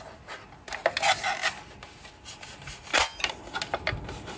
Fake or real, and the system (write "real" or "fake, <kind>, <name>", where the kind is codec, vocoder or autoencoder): real